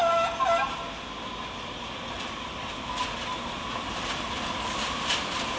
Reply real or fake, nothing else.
real